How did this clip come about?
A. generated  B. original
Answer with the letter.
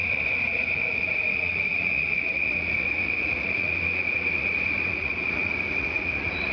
A